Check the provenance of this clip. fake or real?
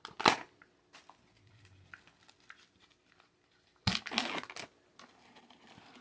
real